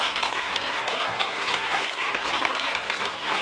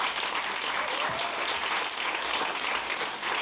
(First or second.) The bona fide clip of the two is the second